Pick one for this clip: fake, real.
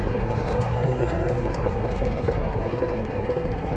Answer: fake